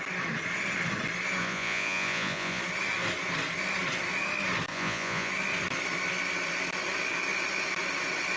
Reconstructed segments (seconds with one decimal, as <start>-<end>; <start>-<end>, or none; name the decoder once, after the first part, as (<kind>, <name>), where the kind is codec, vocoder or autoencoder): 1.4-2.6 (vocoder, Vocos); 4.7-5.3